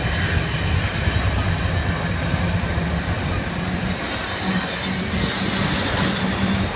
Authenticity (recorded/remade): recorded